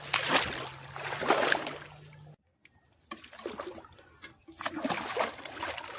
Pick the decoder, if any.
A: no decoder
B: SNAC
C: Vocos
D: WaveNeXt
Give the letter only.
A